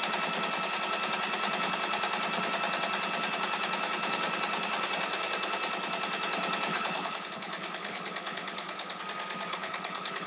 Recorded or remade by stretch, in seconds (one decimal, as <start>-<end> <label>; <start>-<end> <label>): 0.0-6.7 recorded; 6.7-9.0 remade; 9.0-9.5 recorded; 9.5-10.3 remade